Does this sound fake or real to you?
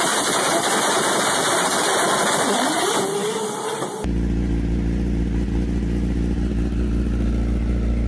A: real